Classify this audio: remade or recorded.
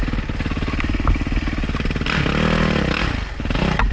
recorded